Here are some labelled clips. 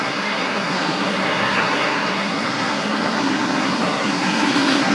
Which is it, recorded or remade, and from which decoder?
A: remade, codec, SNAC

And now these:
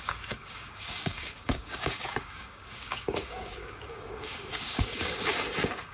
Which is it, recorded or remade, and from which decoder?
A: remade, codec, DAC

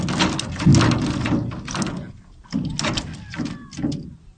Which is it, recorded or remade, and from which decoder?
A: recorded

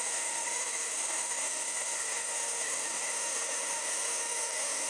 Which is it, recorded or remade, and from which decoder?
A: remade, autoencoder, DAC-VAE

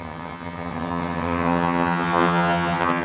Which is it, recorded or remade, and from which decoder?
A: remade, vocoder, HiFi-GAN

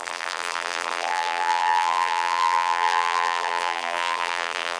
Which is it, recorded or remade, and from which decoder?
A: remade, vocoder, BigVGAN v2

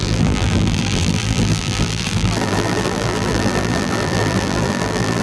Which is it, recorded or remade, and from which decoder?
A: remade, vocoder, BigVGAN v2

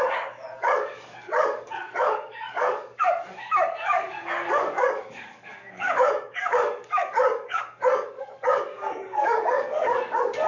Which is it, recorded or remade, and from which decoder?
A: remade, codec, DAC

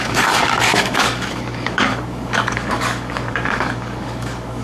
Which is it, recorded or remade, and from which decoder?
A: remade, codec, DAC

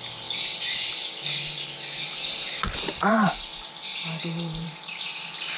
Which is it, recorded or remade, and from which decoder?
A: remade, vocoder, BigVGAN v2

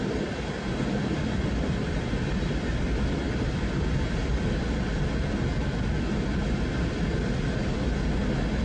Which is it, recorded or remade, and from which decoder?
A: recorded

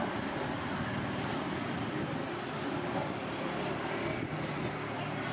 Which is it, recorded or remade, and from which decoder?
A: recorded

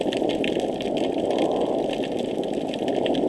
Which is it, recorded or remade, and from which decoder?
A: recorded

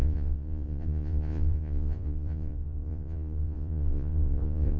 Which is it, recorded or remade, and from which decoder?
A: remade, vocoder, Vocos